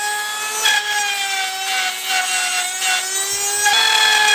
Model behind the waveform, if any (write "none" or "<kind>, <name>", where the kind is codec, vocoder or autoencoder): none